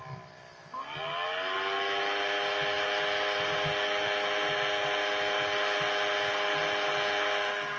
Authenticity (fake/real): real